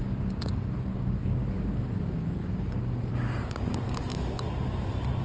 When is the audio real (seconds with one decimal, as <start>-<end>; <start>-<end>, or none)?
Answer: 4.1-5.2